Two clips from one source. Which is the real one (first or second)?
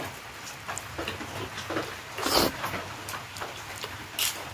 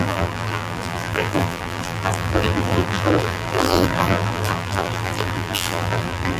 first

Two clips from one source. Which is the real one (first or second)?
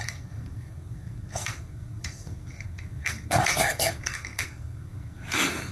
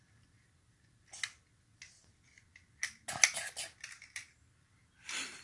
second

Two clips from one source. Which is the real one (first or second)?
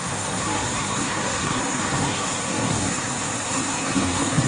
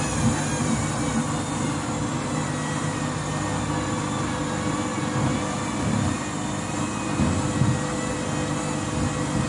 second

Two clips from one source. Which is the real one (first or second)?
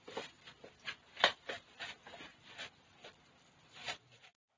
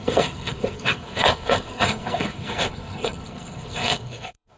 first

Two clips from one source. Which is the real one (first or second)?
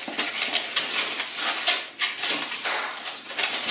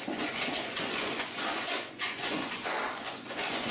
first